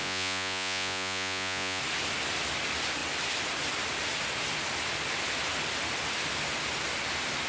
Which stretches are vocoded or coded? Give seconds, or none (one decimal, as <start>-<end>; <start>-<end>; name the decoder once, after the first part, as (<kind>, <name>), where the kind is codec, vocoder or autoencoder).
0.0-1.8 (vocoder, Vocos)